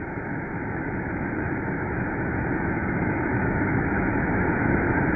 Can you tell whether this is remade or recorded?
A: remade